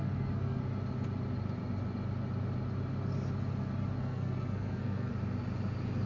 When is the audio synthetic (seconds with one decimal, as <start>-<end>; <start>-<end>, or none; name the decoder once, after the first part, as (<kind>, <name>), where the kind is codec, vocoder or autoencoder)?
0.0-0.6 (codec, SNAC); 4.0-5.1